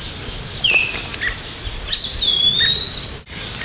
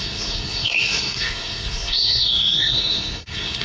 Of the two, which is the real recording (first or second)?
first